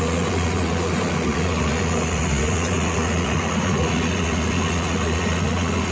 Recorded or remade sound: remade